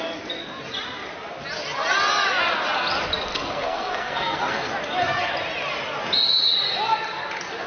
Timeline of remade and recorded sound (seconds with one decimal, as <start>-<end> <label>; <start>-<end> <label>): 0.0-3.3 recorded; 3.3-4.7 remade; 4.7-7.7 recorded

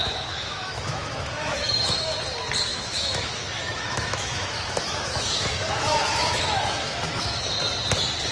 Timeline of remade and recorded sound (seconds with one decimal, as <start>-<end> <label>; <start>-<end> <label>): 0.0-2.2 remade; 2.2-2.7 recorded; 2.7-7.5 remade; 7.5-8.3 recorded

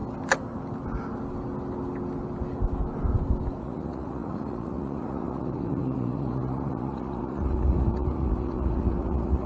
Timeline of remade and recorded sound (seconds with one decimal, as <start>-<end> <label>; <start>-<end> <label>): 0.0-3.6 recorded; 3.6-9.5 remade

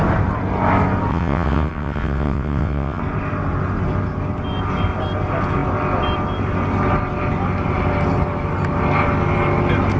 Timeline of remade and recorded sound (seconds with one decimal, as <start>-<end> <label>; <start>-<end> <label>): 0.0-1.1 recorded; 1.1-3.0 remade; 3.0-10.0 recorded

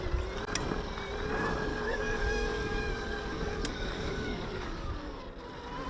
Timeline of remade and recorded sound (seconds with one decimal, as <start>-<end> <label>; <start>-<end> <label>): 0.0-1.7 recorded; 1.7-5.2 remade; 5.2-5.9 recorded

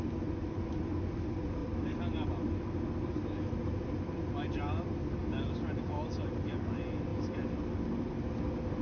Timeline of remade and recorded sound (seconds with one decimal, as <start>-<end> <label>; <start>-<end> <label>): 0.0-1.6 recorded; 1.6-2.3 remade; 2.3-7.1 recorded; 7.1-8.1 remade; 8.1-8.8 recorded

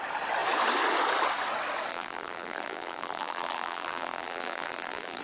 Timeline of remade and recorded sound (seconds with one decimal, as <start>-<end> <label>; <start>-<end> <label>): 0.0-1.9 recorded; 1.9-5.2 remade